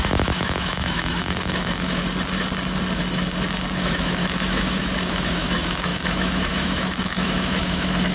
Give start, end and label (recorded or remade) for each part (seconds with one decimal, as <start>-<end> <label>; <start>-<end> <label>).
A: 0.0-2.0 remade; 2.0-3.8 recorded; 3.8-8.1 remade